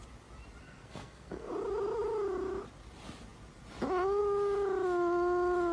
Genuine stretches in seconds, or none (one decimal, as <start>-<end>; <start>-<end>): 0.0-0.6; 1.5-5.7